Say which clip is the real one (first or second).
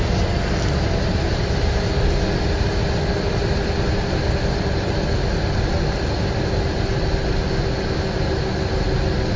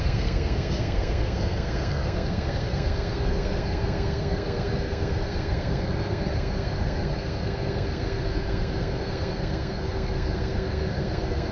first